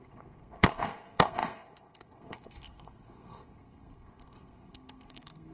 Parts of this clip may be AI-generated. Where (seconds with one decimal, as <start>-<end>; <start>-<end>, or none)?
0.0-5.5